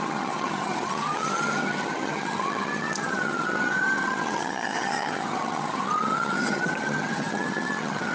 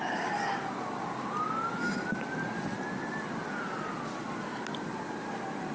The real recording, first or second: second